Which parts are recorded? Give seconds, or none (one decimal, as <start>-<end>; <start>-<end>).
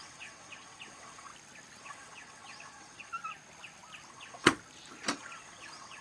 1.3-1.8; 3.1-4.1; 4.5-5.1